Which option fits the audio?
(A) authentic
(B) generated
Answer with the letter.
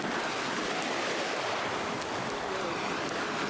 A